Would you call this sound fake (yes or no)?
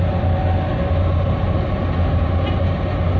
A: no